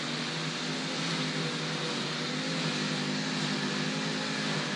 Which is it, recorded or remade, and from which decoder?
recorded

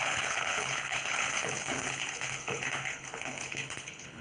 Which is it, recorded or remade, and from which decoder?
remade, codec, HILCodec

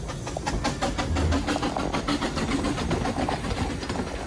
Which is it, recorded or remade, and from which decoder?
recorded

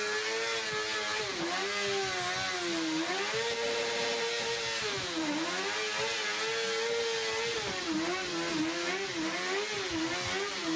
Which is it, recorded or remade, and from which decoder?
recorded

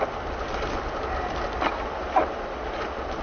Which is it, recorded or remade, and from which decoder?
recorded